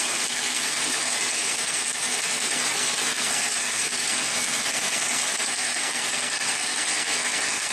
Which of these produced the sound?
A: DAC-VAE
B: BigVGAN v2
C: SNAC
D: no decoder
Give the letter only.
C